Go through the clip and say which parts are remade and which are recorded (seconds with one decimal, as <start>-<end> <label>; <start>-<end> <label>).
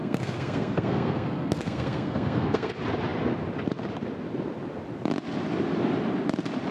0.0-2.7 remade; 2.7-6.7 recorded